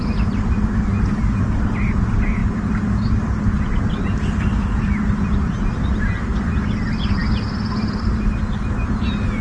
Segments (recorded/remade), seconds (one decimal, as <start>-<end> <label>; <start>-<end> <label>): 0.0-9.4 recorded